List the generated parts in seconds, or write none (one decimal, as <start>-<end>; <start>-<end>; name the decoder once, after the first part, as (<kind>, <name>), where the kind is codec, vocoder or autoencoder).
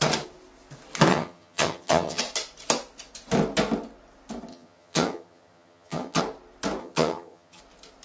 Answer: 1.1-2.2 (vocoder, HiFi-GAN); 4.5-6.2; 6.8-7.6